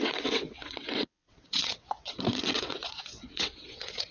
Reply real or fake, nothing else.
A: fake